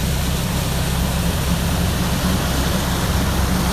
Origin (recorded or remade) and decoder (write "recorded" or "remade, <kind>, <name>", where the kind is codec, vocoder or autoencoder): recorded